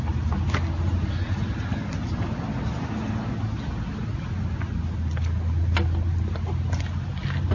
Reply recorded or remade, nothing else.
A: recorded